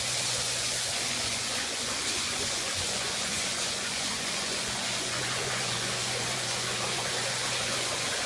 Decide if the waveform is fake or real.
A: fake